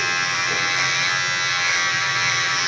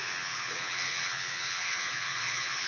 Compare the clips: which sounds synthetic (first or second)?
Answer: second